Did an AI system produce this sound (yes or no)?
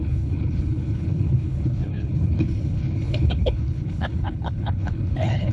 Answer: yes